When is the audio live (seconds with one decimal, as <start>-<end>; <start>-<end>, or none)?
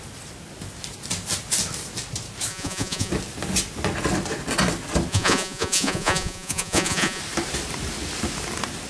0.0-2.5; 3.1-5.1; 7.2-8.9